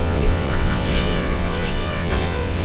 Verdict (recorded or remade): remade